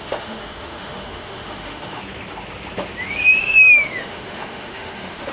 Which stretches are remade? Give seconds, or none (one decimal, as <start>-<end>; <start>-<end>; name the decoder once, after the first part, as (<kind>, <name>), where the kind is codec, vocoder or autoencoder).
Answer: 0.0-2.0 (autoencoder, DAC-VAE); 3.4-5.3